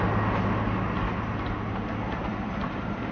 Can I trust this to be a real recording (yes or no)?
yes